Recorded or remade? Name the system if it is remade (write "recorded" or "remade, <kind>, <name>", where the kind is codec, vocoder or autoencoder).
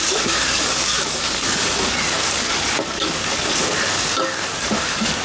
remade, codec, DAC